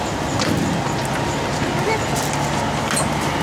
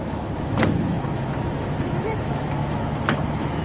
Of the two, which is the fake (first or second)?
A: second